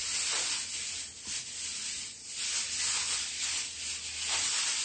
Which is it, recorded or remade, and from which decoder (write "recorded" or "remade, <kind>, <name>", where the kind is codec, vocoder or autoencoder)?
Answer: recorded